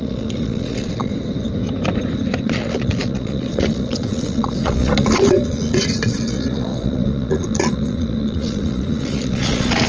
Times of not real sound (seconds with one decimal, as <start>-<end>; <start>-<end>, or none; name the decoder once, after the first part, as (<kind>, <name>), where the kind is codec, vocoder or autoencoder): 0.0-1.1 (vocoder, Vocos); 2.4-9.9